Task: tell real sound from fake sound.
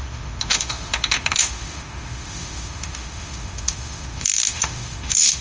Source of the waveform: fake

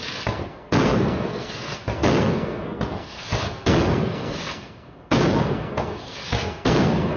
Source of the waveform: fake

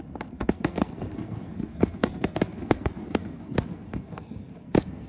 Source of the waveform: fake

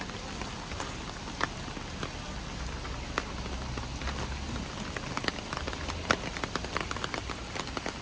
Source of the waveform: real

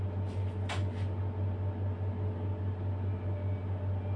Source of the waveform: real